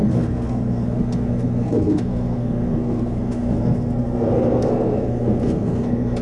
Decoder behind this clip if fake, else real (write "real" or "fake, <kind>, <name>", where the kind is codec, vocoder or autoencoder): fake, codec, SNAC